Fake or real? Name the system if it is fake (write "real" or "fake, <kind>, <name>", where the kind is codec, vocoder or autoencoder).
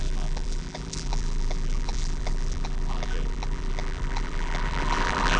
fake, vocoder, BigVGAN v2